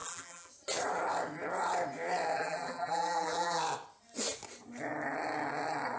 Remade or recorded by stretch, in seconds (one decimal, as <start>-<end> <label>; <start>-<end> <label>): 0.0-0.5 remade; 0.5-2.3 recorded; 2.3-3.6 remade; 3.6-6.0 recorded

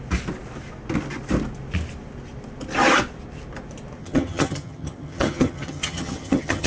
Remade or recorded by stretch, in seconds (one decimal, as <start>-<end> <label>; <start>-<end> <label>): 0.0-4.0 recorded; 4.0-6.7 remade

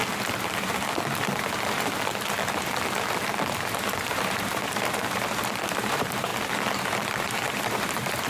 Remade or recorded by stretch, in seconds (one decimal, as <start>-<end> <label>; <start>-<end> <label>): 0.0-3.8 recorded; 3.8-6.3 remade; 6.3-7.5 recorded; 7.5-8.3 remade

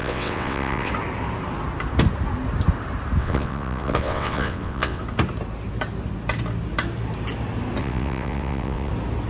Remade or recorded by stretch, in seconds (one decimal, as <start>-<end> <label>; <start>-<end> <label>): 0.0-0.9 remade; 0.9-3.2 recorded; 3.2-5.0 remade; 5.0-7.8 recorded; 7.8-8.9 remade; 8.9-9.3 recorded